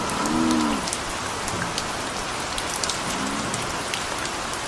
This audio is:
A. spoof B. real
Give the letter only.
B